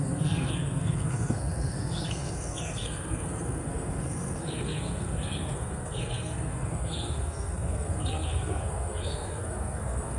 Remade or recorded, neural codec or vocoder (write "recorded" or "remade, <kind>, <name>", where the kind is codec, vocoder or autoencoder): remade, codec, SNAC